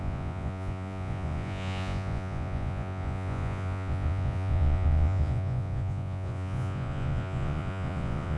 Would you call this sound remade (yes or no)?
yes